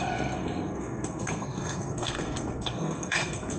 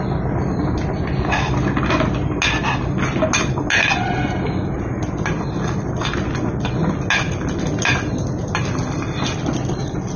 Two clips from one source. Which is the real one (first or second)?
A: second